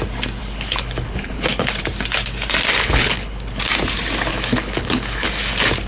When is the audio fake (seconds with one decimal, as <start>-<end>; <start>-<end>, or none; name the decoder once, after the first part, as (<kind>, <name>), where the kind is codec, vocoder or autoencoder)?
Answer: 0.4-1.8 (codec, HILCodec); 2.8-3.6; 4.3-5.3